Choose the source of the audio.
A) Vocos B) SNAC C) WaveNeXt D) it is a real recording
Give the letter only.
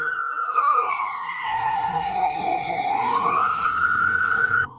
B